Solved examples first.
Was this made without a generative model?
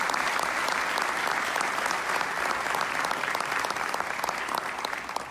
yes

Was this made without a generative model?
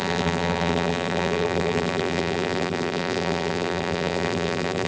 no